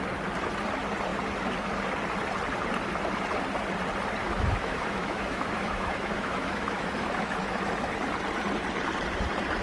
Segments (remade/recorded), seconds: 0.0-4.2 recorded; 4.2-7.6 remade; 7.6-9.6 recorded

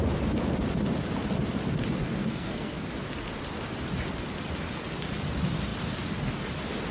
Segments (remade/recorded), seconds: 0.0-2.0 recorded; 2.0-2.9 remade; 2.9-6.9 recorded